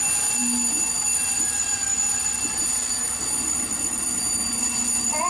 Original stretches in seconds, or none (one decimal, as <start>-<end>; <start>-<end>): 0.0-5.3